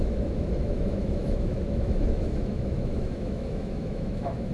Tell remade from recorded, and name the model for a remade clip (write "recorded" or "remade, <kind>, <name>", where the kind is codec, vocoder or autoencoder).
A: remade, autoencoder, DAC-VAE